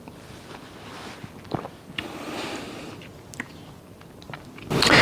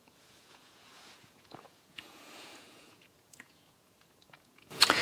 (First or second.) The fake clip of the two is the second